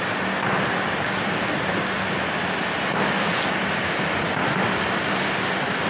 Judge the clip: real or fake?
real